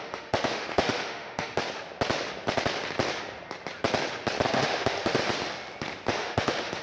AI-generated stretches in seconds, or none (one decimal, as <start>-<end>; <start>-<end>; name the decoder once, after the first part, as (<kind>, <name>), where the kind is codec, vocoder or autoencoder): 0.0-1.6 (autoencoder, DAC-VAE); 4.5-5.2; 6.1-6.8